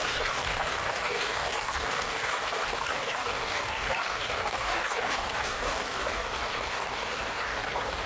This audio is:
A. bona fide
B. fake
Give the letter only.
B